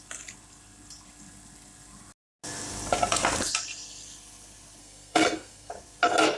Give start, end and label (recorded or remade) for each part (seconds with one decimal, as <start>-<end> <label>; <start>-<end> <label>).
0.0-4.8 recorded; 4.8-5.7 remade; 5.7-6.4 recorded